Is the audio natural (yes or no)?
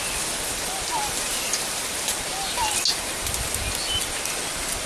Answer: yes